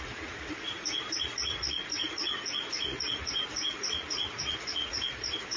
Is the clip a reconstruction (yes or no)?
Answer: yes